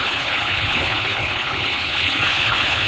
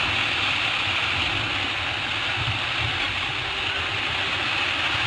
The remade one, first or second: first